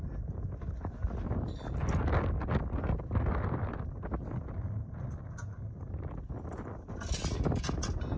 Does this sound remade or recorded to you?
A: recorded